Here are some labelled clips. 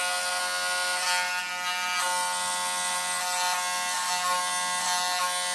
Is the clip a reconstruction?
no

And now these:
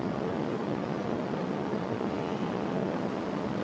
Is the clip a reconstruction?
yes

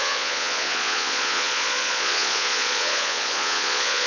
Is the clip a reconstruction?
yes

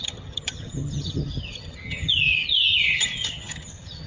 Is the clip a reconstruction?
yes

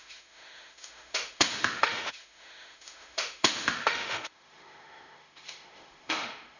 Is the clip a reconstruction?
yes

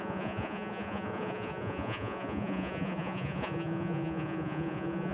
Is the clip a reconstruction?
yes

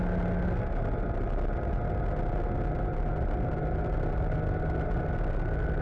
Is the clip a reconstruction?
no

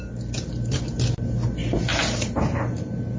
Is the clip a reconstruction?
no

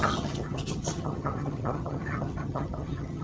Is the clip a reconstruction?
yes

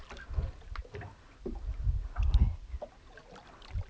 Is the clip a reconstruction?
no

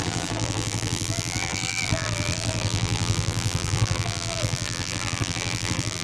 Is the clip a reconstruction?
yes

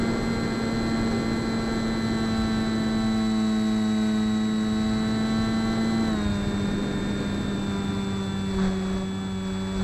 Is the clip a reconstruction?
no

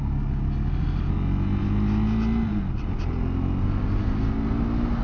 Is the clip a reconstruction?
no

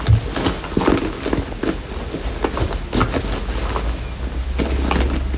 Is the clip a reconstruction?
no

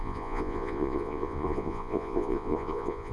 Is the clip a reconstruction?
yes